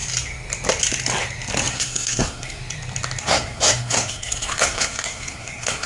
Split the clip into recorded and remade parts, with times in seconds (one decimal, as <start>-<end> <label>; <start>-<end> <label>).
0.0-1.7 recorded; 1.7-2.6 remade; 2.6-3.2 recorded; 3.2-5.9 remade